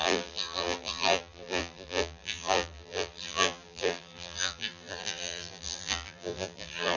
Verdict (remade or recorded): remade